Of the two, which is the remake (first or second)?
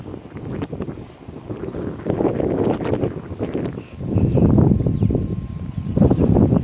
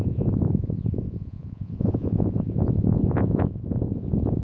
second